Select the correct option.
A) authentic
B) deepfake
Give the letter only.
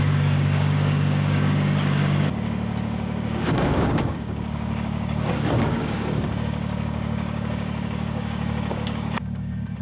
B